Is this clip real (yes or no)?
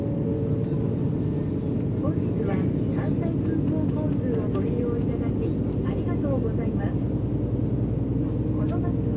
yes